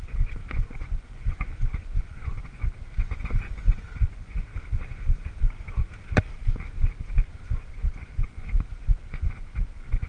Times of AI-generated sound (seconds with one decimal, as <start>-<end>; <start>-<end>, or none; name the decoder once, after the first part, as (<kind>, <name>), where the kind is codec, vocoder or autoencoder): 0.0-2.6 (vocoder, Vocos); 3.6-4.5; 7.7-10.1